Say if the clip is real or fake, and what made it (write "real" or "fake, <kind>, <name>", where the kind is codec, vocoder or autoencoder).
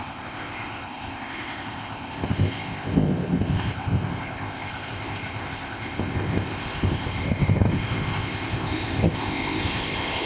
fake, codec, ZipCodec